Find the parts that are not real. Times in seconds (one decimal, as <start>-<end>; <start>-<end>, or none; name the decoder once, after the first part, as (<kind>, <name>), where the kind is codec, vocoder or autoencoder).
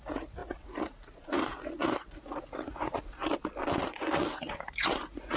0.0-3.2 (vocoder, Vocos); 3.8-5.4